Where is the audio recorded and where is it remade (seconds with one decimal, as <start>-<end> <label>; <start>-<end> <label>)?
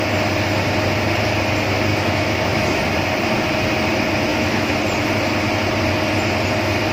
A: 0.0-1.9 recorded; 1.9-2.8 remade; 2.8-4.3 recorded; 4.3-4.8 remade; 4.8-6.9 recorded